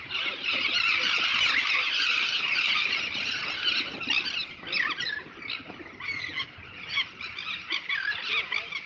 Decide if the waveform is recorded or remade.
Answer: recorded